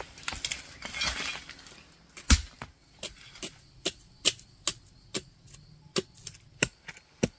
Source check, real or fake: real